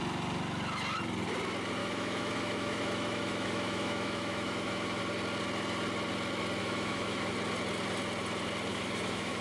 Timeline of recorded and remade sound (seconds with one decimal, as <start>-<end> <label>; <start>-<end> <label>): 0.0-1.8 recorded; 1.8-5.0 remade; 5.0-6.6 recorded; 6.6-7.3 remade; 7.3-8.7 recorded; 8.7-9.4 remade